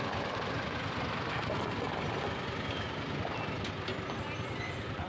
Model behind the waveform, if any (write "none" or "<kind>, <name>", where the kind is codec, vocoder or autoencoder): none